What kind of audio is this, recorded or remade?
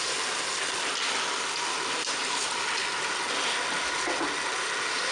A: recorded